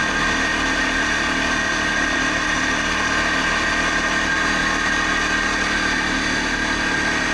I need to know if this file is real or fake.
real